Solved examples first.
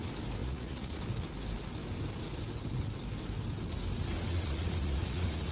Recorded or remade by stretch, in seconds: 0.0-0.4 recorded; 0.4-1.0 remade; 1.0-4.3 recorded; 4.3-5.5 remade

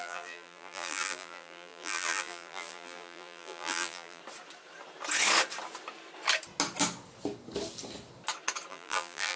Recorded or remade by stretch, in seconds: 0.0-4.2 remade; 4.2-8.7 recorded; 8.7-9.4 remade

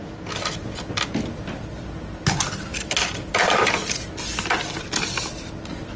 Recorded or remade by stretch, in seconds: 0.0-2.7 recorded; 2.7-5.2 remade; 5.2-6.0 recorded